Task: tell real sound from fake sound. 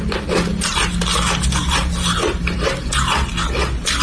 real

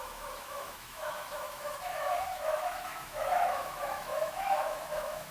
fake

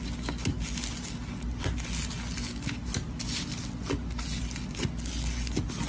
real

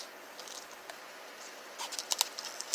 real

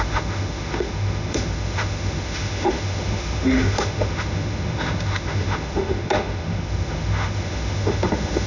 fake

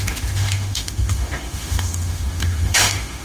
fake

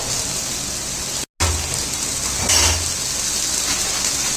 real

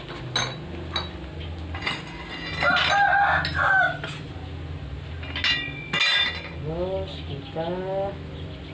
real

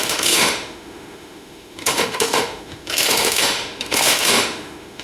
fake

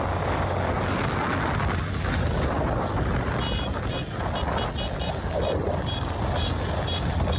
real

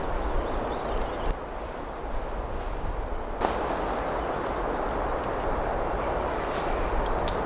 real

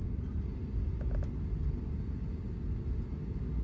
real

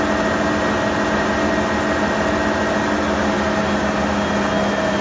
real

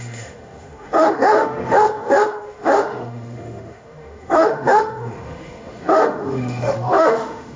fake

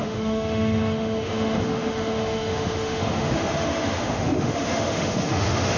fake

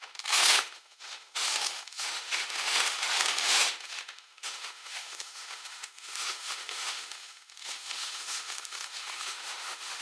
fake